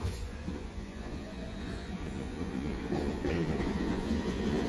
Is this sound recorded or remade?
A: remade